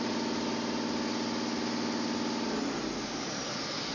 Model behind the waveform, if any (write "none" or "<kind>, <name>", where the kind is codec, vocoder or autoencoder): none